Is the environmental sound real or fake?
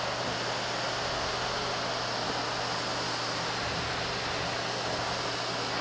real